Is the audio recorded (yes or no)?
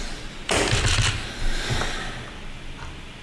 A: yes